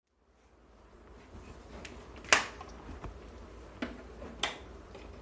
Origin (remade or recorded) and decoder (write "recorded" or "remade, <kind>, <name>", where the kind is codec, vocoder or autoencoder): recorded